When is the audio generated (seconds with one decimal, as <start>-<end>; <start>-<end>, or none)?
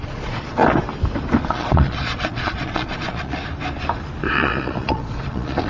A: 0.0-0.6; 1.5-3.4; 4.3-5.7